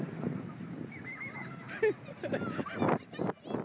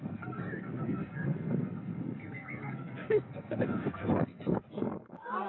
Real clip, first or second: first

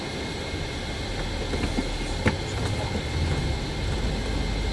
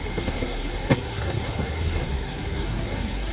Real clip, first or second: first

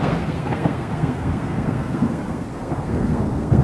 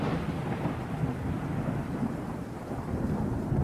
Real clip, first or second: second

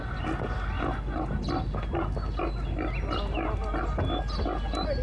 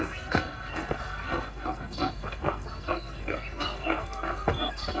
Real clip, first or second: first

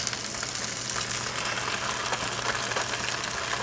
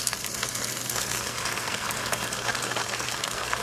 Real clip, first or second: first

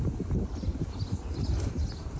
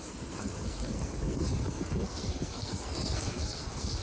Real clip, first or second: first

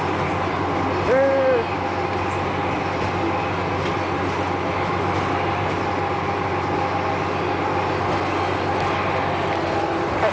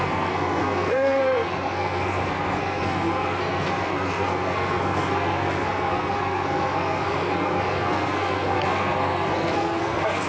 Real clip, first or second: first